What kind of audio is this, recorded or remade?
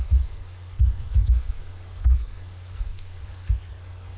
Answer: remade